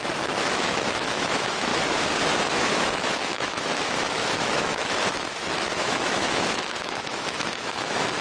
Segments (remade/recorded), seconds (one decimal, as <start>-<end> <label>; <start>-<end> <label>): 0.0-1.7 remade; 1.7-2.3 recorded; 2.3-8.2 remade